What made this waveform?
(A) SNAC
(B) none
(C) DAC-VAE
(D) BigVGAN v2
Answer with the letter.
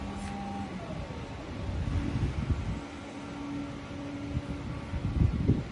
B